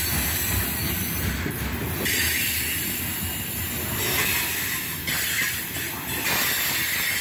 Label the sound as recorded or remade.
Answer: recorded